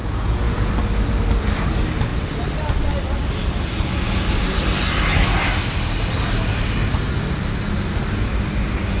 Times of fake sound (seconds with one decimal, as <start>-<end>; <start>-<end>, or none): 0.0-0.7